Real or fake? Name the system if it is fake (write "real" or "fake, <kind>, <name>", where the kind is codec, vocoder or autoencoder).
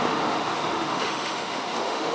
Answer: fake, autoencoder, DAC-VAE